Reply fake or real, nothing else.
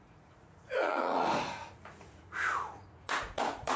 fake